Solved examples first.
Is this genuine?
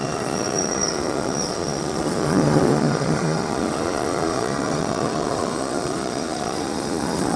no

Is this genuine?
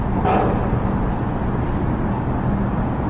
yes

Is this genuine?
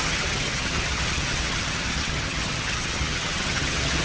no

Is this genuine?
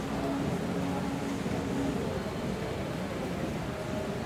yes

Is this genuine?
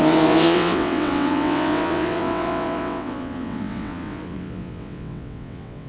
no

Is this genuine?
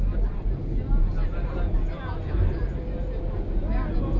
yes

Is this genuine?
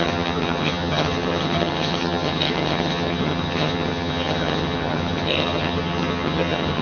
no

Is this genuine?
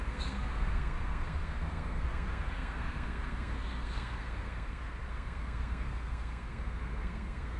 no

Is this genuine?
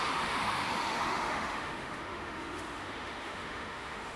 no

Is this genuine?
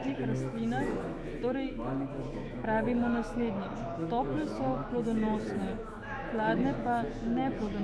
no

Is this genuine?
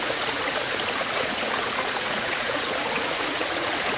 no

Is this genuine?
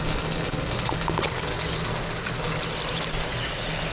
yes